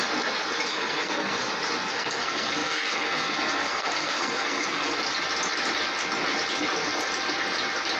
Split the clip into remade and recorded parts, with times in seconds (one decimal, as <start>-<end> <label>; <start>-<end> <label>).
0.0-0.7 recorded; 0.7-1.4 remade; 1.4-1.9 recorded; 1.9-5.0 remade; 5.0-8.0 recorded